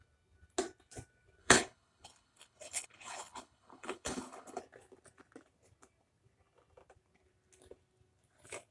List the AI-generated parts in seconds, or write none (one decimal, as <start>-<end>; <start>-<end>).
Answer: 1.4-4.6